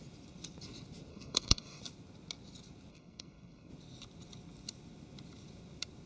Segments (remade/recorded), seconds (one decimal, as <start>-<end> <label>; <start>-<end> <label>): 0.0-1.1 recorded; 1.1-1.8 remade; 1.8-2.9 recorded; 2.9-3.7 remade; 3.7-6.1 recorded